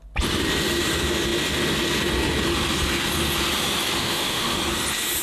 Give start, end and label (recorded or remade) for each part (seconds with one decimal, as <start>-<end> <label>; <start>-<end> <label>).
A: 0.0-4.0 recorded; 4.0-4.6 remade; 4.6-5.2 recorded